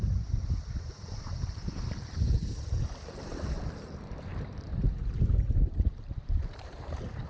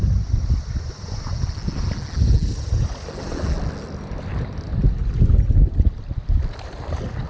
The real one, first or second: second